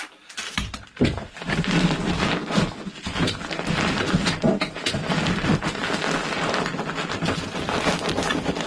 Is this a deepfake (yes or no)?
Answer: no